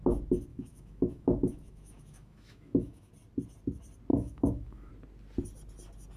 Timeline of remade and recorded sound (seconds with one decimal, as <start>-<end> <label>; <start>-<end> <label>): 0.0-0.5 recorded; 0.5-3.1 remade; 3.1-4.1 recorded; 4.1-4.9 remade; 4.9-6.2 recorded